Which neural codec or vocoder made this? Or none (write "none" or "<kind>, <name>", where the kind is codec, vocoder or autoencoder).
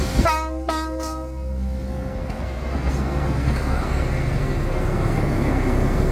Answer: codec, SNAC